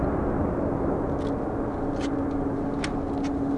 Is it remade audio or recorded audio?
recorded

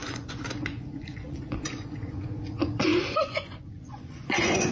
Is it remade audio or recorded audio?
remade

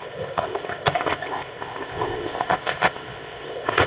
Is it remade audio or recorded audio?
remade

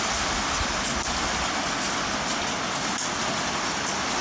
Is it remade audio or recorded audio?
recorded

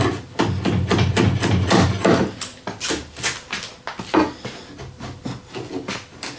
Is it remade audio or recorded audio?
recorded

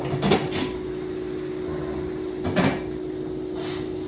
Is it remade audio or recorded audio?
recorded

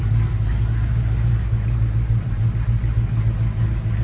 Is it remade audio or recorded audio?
recorded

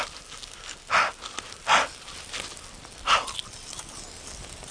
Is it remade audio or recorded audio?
recorded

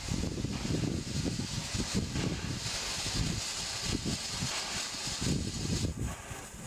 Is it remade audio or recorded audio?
recorded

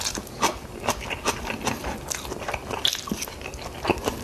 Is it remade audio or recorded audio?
recorded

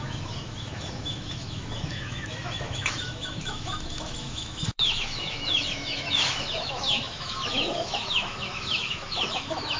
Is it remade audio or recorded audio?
remade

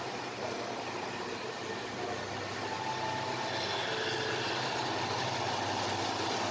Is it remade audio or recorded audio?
recorded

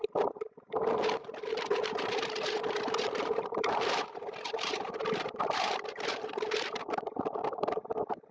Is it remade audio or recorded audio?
remade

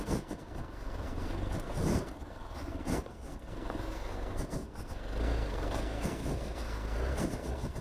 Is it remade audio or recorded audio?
remade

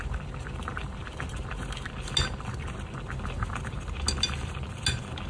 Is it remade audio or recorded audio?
recorded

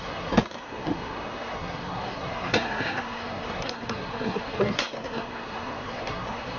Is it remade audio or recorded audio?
remade